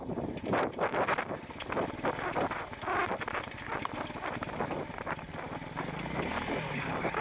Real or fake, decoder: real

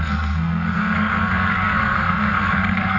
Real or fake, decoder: fake, codec, SNAC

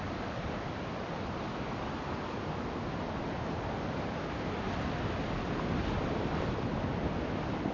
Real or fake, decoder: real